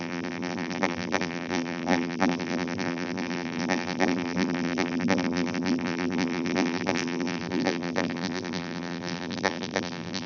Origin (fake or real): fake